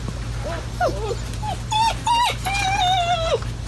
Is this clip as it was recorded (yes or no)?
yes